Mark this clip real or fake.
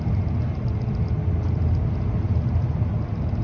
real